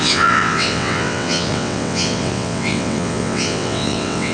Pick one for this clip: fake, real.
fake